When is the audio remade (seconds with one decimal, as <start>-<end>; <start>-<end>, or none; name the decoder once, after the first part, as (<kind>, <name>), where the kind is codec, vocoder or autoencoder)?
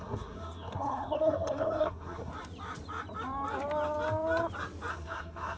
0.0-2.3 (codec, SNAC); 4.9-5.6